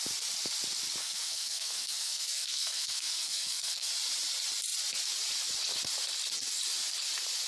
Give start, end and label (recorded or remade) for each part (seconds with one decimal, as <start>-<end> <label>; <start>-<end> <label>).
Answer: 0.0-1.0 recorded; 1.0-3.9 remade; 3.9-7.5 recorded